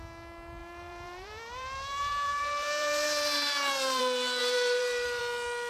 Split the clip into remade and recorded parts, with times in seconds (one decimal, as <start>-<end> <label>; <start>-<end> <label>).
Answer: 0.0-0.6 recorded; 0.6-4.0 remade; 4.0-4.4 recorded; 4.4-5.2 remade; 5.2-5.7 recorded

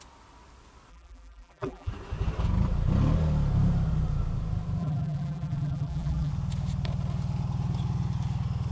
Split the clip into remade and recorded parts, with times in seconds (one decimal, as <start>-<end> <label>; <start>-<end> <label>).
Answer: 0.0-0.9 recorded; 0.9-1.9 remade; 1.9-4.8 recorded; 4.8-6.3 remade; 6.3-8.7 recorded

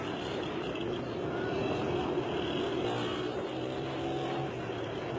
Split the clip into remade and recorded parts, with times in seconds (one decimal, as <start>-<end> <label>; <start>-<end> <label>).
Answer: 0.0-1.6 remade; 1.6-3.2 recorded; 3.2-5.2 remade